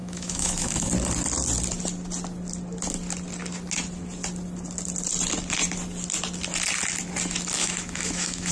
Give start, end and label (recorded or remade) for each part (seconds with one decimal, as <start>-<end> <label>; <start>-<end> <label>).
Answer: 0.0-0.9 remade; 0.9-7.6 recorded; 7.6-8.5 remade